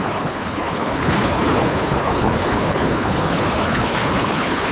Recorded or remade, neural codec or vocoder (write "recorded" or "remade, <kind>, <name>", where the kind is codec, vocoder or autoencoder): remade, codec, HILCodec